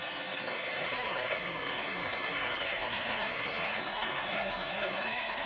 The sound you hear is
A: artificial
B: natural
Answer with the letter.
A